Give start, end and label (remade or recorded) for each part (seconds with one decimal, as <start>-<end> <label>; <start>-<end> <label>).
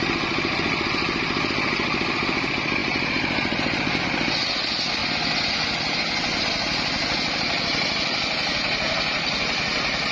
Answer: 0.0-10.1 recorded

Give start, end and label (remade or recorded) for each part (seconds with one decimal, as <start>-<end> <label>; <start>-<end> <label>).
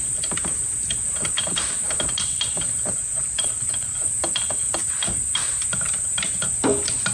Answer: 0.0-3.0 recorded; 3.0-4.1 remade; 4.1-7.1 recorded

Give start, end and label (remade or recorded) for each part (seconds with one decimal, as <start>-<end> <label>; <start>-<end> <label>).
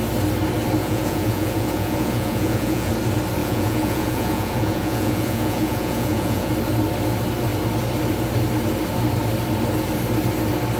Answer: 0.0-0.8 recorded; 0.8-2.9 remade; 2.9-3.4 recorded; 3.4-6.5 remade; 6.5-10.8 recorded